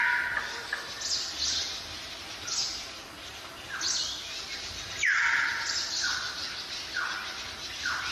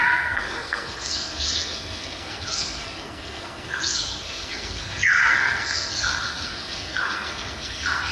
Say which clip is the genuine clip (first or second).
first